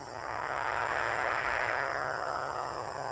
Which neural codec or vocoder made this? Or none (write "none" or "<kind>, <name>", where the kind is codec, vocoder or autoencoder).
vocoder, HiFi-GAN